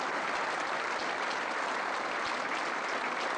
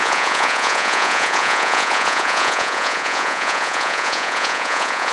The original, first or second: first